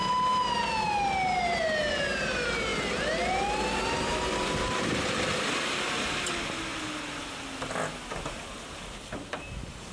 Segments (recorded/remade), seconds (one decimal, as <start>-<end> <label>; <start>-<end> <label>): 0.0-9.9 recorded